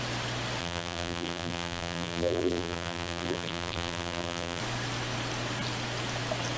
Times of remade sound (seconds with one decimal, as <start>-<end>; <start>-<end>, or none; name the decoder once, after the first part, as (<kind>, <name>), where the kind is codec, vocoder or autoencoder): 0.6-4.6 (vocoder, BigVGAN v2)